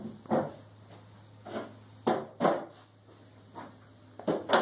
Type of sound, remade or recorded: recorded